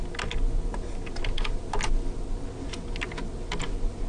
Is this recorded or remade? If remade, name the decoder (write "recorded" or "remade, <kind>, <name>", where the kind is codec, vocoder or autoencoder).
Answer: recorded